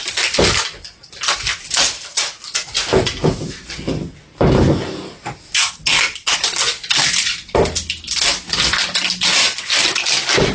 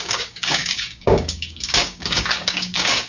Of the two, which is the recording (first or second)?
first